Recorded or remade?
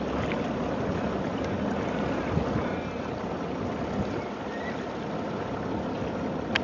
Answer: recorded